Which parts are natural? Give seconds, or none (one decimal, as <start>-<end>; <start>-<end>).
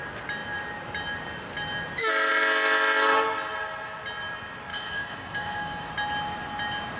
0.0-4.7; 5.9-7.0